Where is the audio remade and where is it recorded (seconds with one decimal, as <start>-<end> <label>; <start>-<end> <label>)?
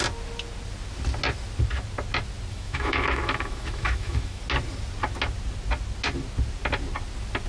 0.0-2.5 recorded; 2.5-4.4 remade; 4.4-7.5 recorded